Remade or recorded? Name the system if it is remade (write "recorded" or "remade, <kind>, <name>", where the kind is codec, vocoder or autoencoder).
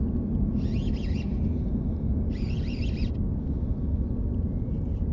recorded